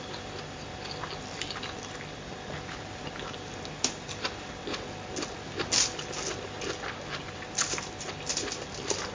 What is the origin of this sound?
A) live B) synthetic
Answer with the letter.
A